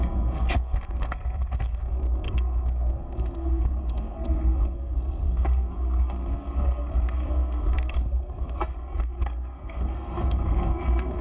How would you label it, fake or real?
fake